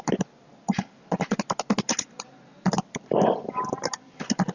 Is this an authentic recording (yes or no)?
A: yes